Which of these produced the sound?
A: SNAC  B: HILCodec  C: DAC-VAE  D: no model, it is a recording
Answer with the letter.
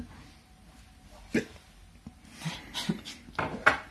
D